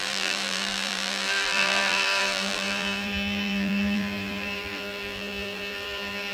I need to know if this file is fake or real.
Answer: fake